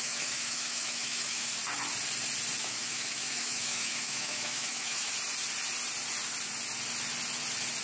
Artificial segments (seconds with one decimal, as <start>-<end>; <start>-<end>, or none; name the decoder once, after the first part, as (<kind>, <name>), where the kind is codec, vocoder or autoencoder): 0.0-1.5 (autoencoder, DAC-VAE); 2.6-5.1